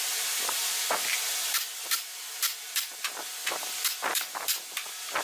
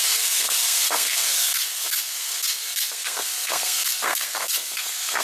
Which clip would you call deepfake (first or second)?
second